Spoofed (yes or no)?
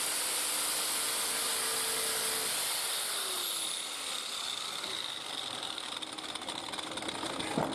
no